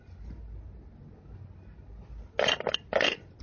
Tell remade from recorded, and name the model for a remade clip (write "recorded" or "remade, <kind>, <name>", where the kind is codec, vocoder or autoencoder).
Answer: recorded